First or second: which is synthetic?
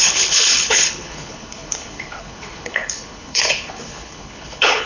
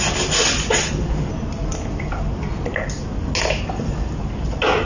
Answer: first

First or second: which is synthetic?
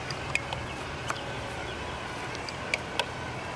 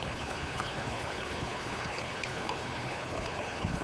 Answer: second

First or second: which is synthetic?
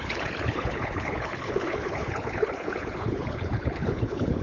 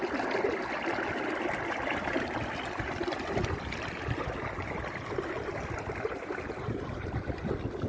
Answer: first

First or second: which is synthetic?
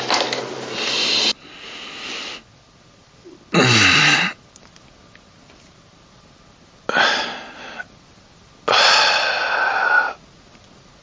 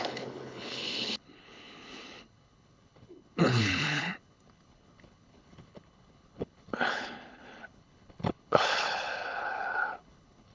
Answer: second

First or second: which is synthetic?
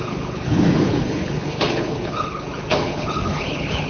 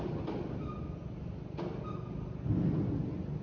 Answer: first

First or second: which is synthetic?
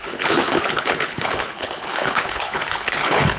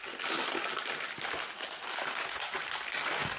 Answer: first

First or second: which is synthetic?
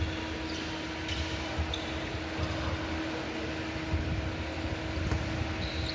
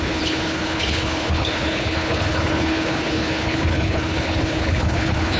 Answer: second